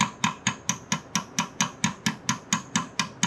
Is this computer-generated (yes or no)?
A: no